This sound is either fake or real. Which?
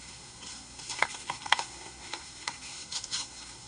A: fake